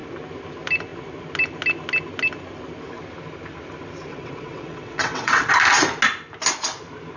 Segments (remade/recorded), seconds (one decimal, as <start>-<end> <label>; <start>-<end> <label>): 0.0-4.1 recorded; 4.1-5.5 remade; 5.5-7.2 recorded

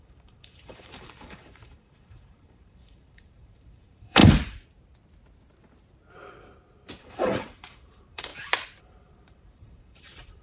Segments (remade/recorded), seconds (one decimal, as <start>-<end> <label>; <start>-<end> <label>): 0.0-4.2 remade; 4.2-7.0 recorded; 7.0-8.3 remade; 8.3-8.8 recorded; 8.8-10.4 remade

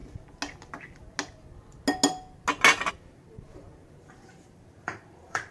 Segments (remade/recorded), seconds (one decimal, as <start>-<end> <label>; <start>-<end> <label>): 0.0-2.9 recorded; 2.9-5.5 remade